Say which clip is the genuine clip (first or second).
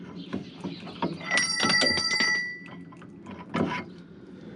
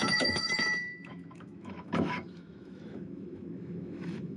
first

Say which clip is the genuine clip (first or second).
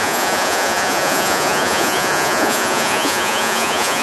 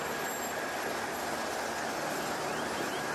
second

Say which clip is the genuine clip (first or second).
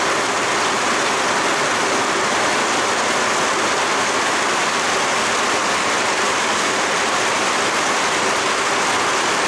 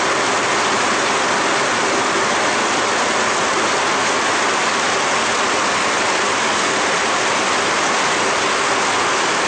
second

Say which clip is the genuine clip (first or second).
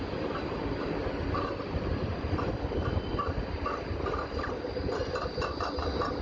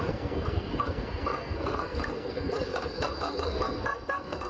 first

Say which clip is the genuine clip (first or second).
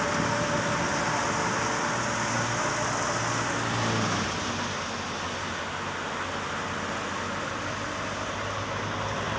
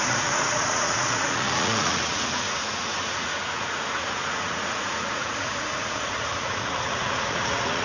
first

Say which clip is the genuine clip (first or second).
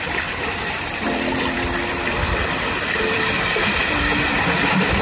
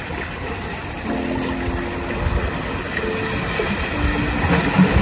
second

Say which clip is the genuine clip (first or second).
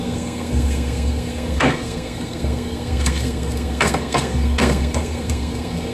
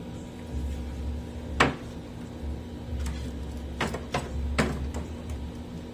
second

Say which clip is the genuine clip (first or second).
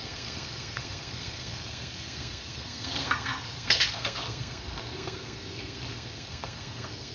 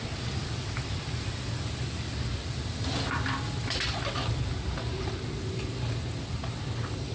second